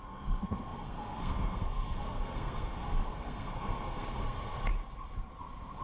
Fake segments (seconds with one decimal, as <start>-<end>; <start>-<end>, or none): 0.0-4.7